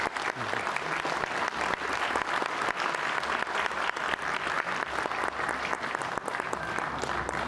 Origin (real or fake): real